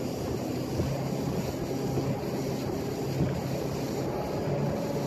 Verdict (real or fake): real